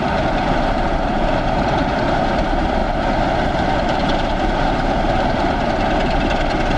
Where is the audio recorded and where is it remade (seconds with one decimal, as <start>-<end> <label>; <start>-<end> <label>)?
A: 0.0-2.8 remade; 2.8-3.3 recorded; 3.3-6.8 remade